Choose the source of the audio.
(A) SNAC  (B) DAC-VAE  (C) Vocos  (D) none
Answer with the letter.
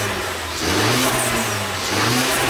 D